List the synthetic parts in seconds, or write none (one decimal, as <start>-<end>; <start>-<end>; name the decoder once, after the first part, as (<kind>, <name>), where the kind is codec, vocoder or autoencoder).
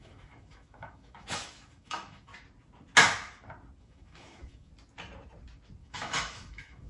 0.0-2.3 (autoencoder, DAC-VAE); 3.8-4.7; 5.8-6.9